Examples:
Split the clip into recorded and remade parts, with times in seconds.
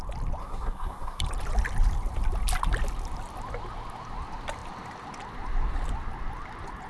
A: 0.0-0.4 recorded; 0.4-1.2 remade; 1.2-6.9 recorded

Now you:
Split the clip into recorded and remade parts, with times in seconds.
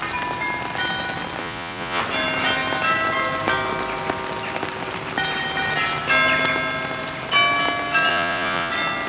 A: 0.0-1.4 recorded; 1.4-2.0 remade; 2.0-8.1 recorded; 8.1-8.7 remade; 8.7-9.1 recorded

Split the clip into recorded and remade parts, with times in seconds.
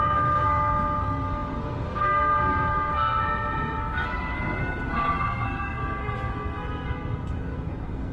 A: 0.0-8.1 remade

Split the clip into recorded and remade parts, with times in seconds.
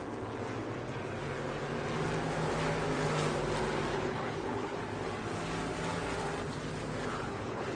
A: 0.0-3.9 recorded; 3.9-4.8 remade; 4.8-7.1 recorded; 7.1-7.8 remade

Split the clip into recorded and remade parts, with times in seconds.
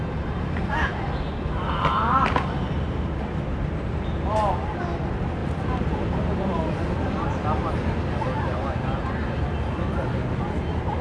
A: 0.0-11.0 remade